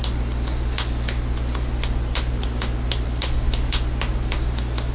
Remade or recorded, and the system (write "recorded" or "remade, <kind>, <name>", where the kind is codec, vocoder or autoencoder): recorded